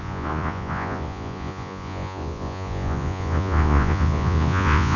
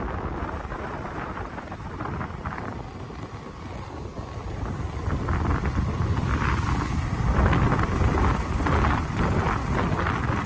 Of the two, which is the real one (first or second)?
second